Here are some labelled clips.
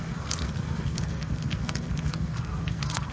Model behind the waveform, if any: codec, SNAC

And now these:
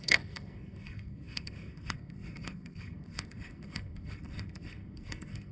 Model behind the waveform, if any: codec, SNAC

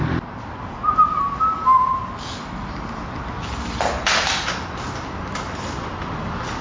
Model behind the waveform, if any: none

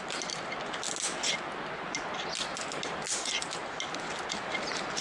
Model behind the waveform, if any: none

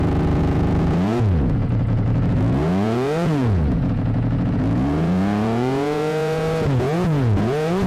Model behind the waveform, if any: vocoder, Vocos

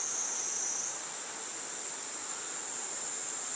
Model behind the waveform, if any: none